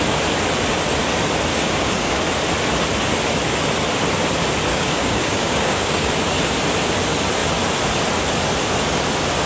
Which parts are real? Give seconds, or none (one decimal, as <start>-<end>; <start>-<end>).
0.0-1.5; 2.2-4.7; 6.1-9.5